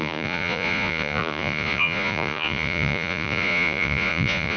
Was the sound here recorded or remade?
remade